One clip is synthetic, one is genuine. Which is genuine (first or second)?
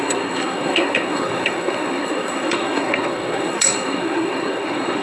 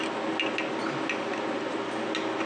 second